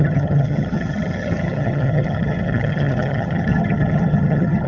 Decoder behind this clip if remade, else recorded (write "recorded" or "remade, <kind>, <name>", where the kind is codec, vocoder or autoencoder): remade, vocoder, HiFi-GAN